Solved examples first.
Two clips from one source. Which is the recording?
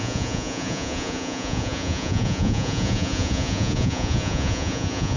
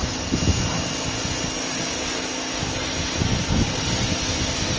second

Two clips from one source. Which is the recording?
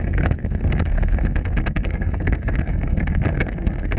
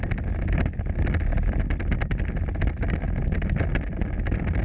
second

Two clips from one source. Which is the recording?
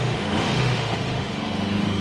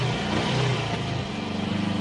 second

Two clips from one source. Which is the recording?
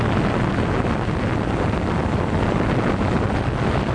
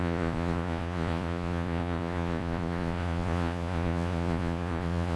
first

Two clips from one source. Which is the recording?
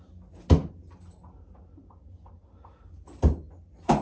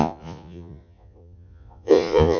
first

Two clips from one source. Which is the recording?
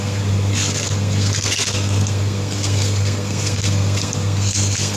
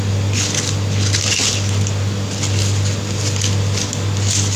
second